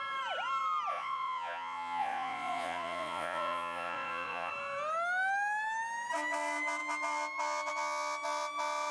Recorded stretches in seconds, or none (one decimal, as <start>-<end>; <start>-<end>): 0.0-0.9; 4.5-8.9